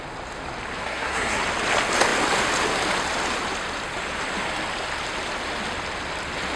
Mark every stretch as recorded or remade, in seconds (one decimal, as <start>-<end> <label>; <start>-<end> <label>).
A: 0.0-0.8 recorded; 0.8-1.4 remade; 1.4-6.6 recorded

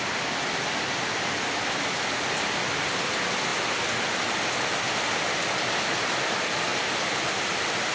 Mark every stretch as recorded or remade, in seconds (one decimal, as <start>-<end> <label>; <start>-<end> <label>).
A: 0.0-6.7 recorded; 6.7-7.9 remade

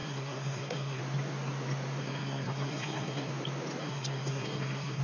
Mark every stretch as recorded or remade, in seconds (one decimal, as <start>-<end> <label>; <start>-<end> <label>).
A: 0.0-1.0 remade; 1.0-2.0 recorded; 2.0-3.3 remade; 3.3-3.8 recorded; 3.8-5.0 remade

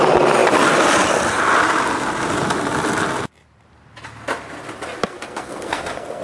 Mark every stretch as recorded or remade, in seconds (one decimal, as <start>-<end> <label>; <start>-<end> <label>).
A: 0.0-5.0 recorded; 5.0-6.2 remade

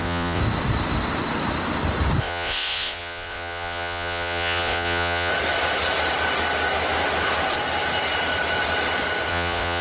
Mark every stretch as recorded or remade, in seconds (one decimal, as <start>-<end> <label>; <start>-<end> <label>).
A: 0.0-0.4 remade; 0.4-2.2 recorded; 2.2-5.3 remade; 5.3-9.3 recorded; 9.3-9.8 remade

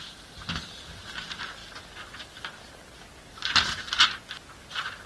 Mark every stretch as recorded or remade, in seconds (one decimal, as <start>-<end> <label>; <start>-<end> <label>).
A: 0.0-5.1 recorded

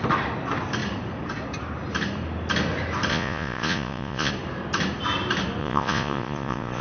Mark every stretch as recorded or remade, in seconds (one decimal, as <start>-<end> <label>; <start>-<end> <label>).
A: 0.0-3.1 recorded; 3.1-4.3 remade; 4.3-5.6 recorded; 5.6-6.8 remade